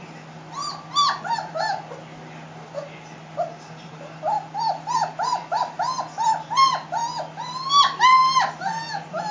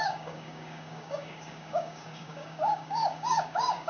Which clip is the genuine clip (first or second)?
first